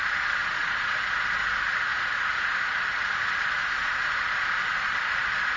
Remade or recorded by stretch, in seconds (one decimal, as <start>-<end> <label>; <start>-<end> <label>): 0.0-5.6 recorded